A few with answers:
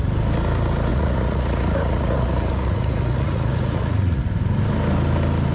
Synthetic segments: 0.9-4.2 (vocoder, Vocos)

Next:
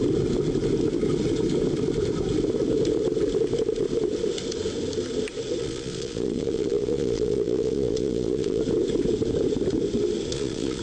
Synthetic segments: 5.6-8.6 (vocoder, Vocos); 10.3-10.8

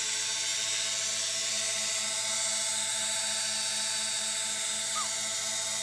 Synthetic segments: none